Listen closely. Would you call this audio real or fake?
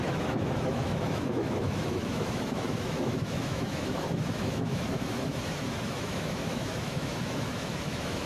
fake